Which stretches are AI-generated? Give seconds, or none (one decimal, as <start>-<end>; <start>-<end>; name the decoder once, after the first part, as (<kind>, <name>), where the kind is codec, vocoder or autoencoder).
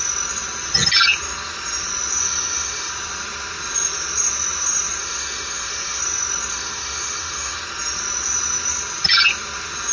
2.2-2.9 (autoencoder, DAC-VAE); 5.0-6.0; 6.5-7.6